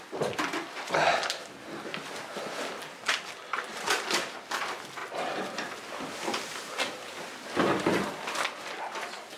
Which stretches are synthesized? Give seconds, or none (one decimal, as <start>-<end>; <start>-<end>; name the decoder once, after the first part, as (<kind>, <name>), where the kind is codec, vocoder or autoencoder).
3.7-4.6 (vocoder, BigVGAN v2)